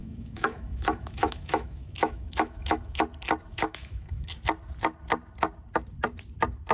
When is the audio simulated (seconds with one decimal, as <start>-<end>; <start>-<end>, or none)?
0.0-3.0; 3.5-4.3